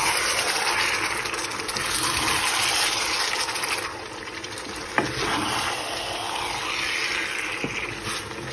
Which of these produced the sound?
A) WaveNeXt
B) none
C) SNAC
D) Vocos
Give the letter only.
B